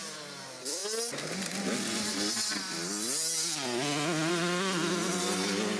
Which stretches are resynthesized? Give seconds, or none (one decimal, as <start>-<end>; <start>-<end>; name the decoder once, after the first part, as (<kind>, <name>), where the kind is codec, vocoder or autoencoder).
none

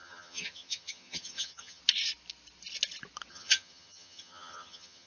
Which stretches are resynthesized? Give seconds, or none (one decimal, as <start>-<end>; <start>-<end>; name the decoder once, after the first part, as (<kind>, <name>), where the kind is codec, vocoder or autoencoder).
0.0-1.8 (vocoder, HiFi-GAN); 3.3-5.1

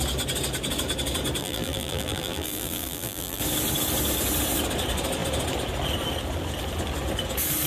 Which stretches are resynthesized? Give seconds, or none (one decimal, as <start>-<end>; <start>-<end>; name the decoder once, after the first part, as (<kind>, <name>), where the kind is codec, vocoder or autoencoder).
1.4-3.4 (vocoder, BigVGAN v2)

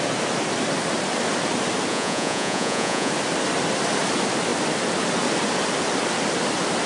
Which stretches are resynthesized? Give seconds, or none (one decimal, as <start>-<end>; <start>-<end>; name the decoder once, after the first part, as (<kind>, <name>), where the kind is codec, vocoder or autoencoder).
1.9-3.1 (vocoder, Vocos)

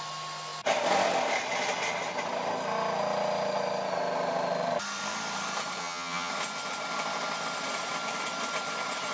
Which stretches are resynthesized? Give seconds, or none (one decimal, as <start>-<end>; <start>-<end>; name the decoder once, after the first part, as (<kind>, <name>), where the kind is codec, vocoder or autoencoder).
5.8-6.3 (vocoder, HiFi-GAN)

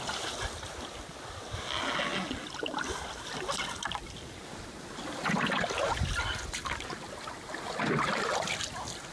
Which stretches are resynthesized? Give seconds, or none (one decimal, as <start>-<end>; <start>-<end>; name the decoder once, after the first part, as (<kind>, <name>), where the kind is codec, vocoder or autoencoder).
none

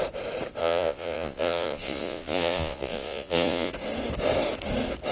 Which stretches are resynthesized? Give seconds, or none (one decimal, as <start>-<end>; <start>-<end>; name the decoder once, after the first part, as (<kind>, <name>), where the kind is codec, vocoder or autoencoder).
0.6-3.7 (vocoder, Vocos)